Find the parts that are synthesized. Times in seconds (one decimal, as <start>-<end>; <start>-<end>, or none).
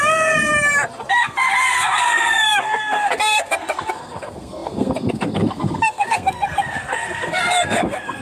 0.0-0.5; 1.1-8.2